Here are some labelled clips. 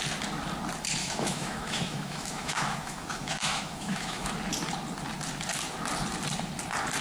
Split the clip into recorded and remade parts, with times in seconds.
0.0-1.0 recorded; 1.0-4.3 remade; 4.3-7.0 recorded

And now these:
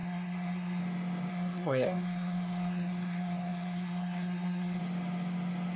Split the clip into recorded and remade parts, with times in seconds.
0.0-0.8 remade; 0.8-1.3 recorded; 1.3-4.8 remade; 4.8-5.8 recorded

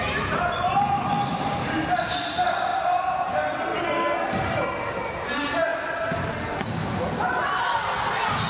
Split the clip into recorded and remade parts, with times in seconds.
0.0-8.5 recorded

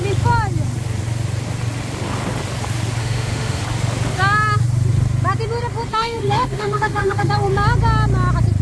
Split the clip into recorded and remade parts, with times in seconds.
0.0-3.0 recorded; 3.0-3.6 remade; 3.6-5.9 recorded; 5.9-7.3 remade; 7.3-8.6 recorded

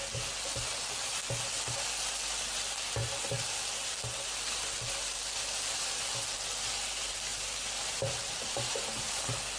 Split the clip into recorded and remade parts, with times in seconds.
0.0-7.3 recorded; 7.3-9.2 remade; 9.2-9.6 recorded

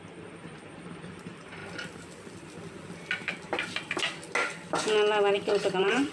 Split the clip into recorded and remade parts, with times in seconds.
0.0-1.6 remade; 1.6-5.3 recorded; 5.3-6.1 remade

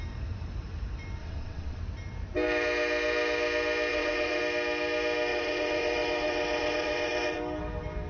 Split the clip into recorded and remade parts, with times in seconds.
0.0-1.2 recorded; 1.2-1.8 remade; 1.8-3.9 recorded; 3.9-4.4 remade; 4.4-5.3 recorded; 5.3-7.4 remade; 7.4-8.1 recorded